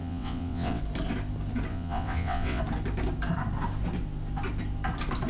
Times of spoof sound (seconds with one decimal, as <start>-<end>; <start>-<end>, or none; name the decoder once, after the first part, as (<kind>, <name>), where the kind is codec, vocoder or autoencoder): 0.0-0.8 (vocoder, WaveNeXt); 1.7-2.6